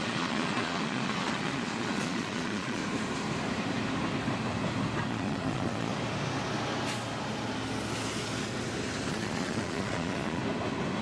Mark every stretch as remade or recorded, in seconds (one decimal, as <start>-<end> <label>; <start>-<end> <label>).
0.0-2.8 remade; 2.8-5.1 recorded; 5.1-5.9 remade; 5.9-9.1 recorded; 9.1-10.4 remade; 10.4-11.0 recorded